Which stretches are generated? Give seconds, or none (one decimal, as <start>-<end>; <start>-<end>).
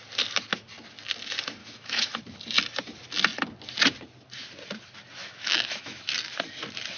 1.6-2.2; 5.2-6.1